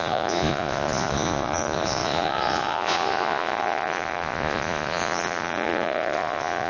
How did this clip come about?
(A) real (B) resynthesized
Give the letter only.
B